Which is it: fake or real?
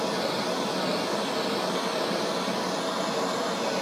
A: real